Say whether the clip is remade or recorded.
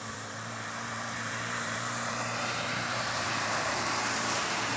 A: remade